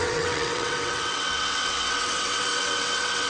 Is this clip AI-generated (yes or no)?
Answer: yes